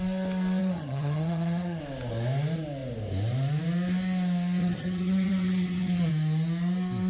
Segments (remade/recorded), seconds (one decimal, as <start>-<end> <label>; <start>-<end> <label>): 0.0-0.6 recorded; 0.6-1.8 remade; 1.8-4.6 recorded; 4.6-6.1 remade; 6.1-7.1 recorded